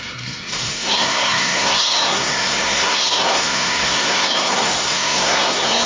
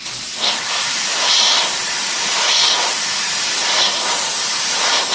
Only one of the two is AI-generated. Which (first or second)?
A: first